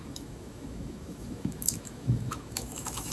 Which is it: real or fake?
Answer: fake